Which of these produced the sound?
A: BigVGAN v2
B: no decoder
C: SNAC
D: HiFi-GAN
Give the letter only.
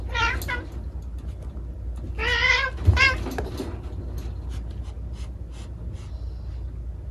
B